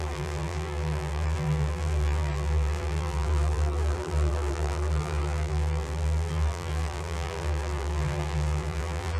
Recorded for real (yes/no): no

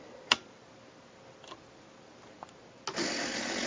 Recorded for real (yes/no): yes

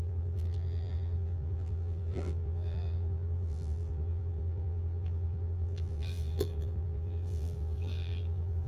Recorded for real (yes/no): no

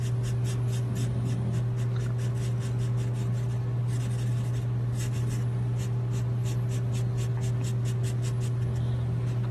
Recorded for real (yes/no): yes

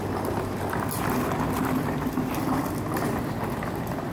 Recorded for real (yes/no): yes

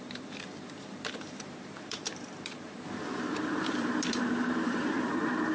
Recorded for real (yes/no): no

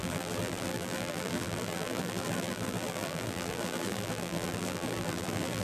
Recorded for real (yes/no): no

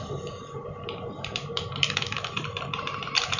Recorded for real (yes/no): no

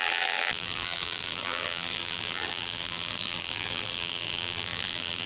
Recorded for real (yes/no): no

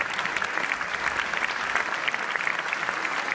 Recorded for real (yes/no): yes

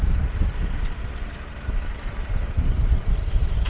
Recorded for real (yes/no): yes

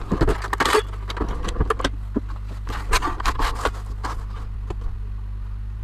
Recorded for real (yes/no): yes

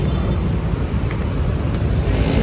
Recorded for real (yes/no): yes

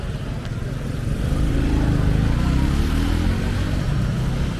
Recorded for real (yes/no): yes